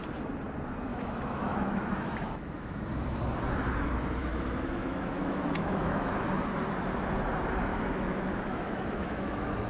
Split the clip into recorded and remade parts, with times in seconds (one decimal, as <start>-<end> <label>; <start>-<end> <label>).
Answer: 0.0-0.9 recorded; 0.9-2.8 remade; 2.8-4.2 recorded; 4.2-6.1 remade; 6.1-7.7 recorded; 7.7-9.7 remade